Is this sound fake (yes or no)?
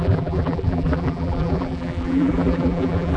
yes